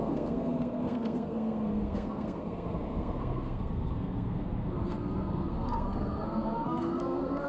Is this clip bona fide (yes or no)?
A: no